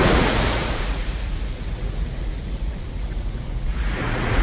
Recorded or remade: remade